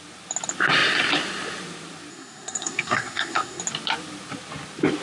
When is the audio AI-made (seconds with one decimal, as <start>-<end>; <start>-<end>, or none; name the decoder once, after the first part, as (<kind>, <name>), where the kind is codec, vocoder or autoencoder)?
2.1-3.6 (codec, SNAC)